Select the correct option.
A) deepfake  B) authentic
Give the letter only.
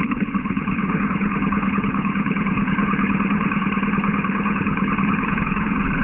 A